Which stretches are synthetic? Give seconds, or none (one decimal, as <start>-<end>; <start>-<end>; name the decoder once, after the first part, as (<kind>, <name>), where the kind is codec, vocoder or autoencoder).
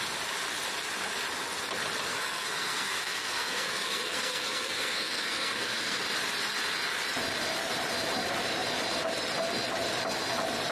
2.1-6.0 (codec, SNAC)